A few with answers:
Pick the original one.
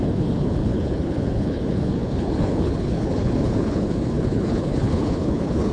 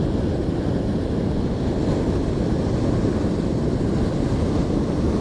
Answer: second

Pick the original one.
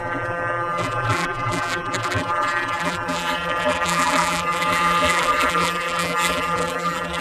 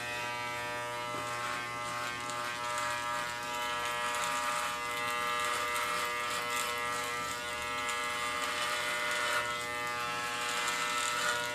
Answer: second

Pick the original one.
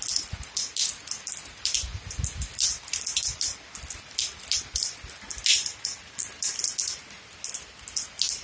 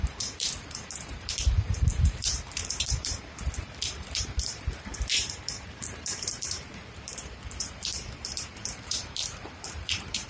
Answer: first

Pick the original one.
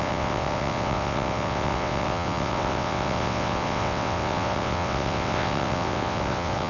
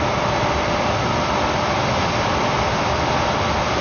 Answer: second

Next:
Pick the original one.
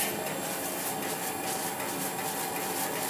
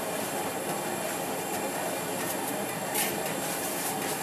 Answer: first